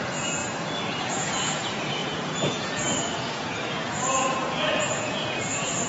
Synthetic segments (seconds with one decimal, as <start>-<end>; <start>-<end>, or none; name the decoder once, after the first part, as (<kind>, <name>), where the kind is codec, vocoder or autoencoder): 0.0-0.4 (vocoder, Vocos); 1.0-5.9